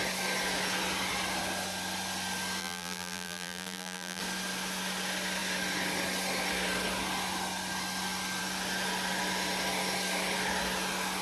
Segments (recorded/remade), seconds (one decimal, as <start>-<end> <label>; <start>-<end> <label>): 0.0-2.6 recorded; 2.6-4.2 remade; 4.2-11.2 recorded